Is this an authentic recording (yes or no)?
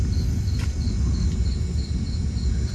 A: yes